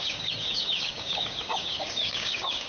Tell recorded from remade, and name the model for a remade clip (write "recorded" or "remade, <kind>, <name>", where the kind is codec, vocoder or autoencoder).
remade, codec, DAC